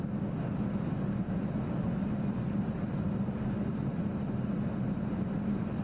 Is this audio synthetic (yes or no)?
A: no